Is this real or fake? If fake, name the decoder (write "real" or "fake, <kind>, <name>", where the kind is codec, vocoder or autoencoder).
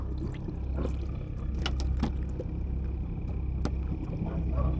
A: real